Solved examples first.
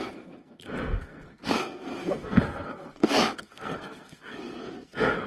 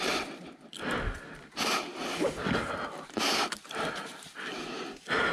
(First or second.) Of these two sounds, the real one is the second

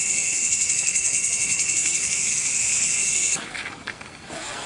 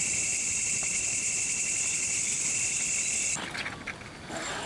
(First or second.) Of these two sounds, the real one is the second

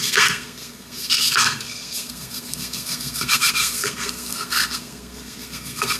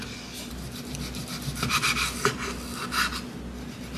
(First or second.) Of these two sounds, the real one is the second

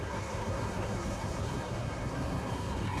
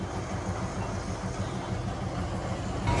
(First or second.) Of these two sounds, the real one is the second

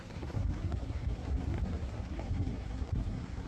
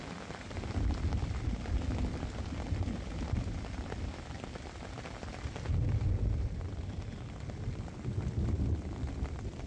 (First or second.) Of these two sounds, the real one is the second